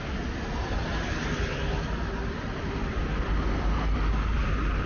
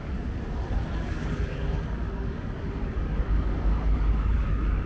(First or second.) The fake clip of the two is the second